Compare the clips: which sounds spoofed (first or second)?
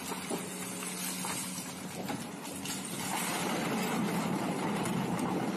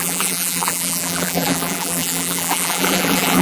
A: second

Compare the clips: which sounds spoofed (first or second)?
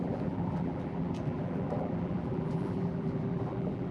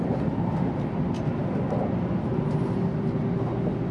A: first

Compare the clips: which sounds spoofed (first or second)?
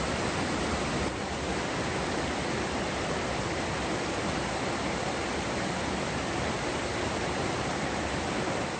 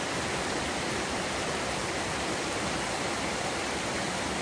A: second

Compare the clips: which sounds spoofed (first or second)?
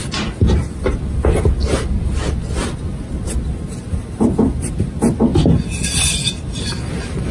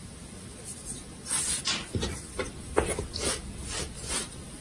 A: second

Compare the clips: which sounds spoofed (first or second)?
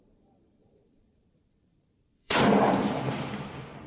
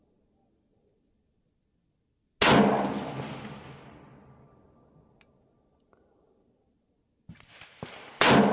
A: first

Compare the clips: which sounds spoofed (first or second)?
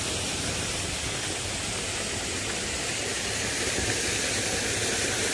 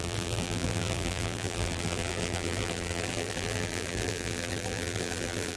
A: second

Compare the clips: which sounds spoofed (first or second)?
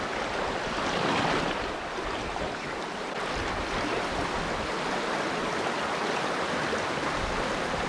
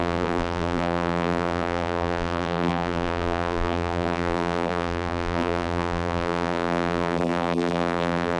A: second